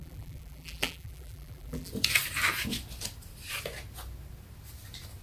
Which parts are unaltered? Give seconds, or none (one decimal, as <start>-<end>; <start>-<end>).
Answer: 1.9-5.2